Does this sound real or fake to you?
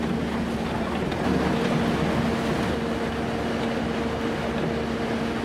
real